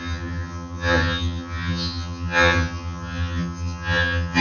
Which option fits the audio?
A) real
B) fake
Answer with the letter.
B